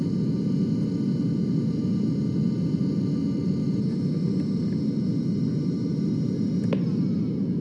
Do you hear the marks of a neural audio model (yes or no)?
no